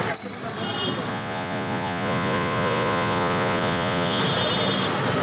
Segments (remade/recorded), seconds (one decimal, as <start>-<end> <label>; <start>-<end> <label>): 0.0-1.1 recorded; 1.1-4.2 remade; 4.2-5.2 recorded